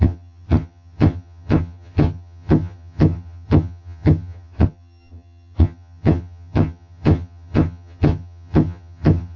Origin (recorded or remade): remade